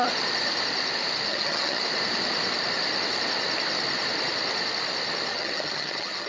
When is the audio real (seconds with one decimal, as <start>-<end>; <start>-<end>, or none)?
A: 0.0-1.3; 1.8-5.3